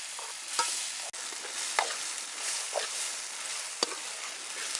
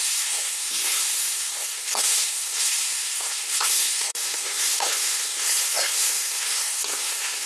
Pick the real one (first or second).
first